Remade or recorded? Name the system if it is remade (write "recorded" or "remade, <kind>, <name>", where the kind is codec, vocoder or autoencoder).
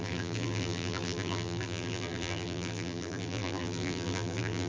remade, vocoder, BigVGAN v2